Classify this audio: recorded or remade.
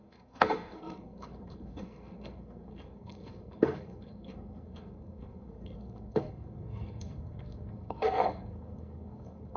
remade